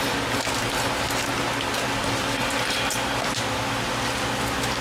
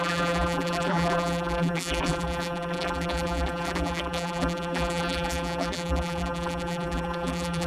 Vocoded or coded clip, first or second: second